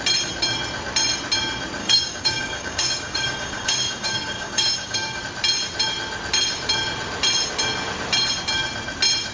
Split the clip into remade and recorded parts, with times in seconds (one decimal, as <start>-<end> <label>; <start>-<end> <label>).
0.0-1.8 recorded; 1.8-5.2 remade; 5.2-9.3 recorded